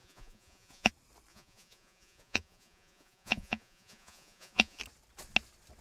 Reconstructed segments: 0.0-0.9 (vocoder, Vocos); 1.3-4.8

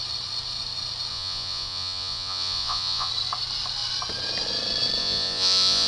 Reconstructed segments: 1.1-3.1 (vocoder, Vocos); 5.0-5.9

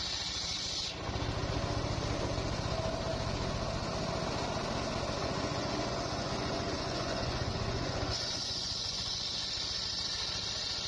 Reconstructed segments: 5.2-9.5 (vocoder, Vocos)

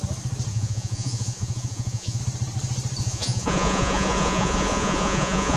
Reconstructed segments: 0.5-2.2 (vocoder, Vocos); 3.0-5.6

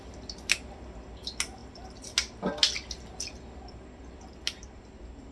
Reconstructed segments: none

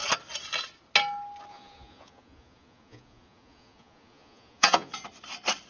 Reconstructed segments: 1.5-4.9 (vocoder, Vocos)